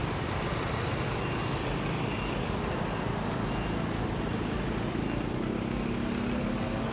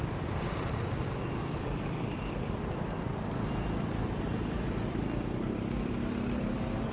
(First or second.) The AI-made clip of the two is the second